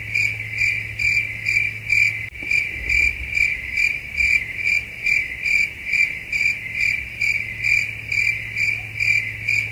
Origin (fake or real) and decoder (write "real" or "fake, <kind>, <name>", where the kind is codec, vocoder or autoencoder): real